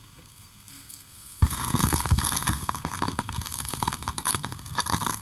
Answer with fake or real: fake